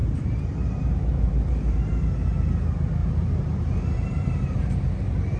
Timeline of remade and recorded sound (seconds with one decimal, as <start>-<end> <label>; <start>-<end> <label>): 0.0-1.2 remade; 1.2-3.0 recorded; 3.0-4.9 remade; 4.9-5.4 recorded